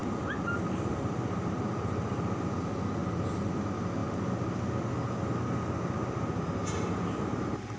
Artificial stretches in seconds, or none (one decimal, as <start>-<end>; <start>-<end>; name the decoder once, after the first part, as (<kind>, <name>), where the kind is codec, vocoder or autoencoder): none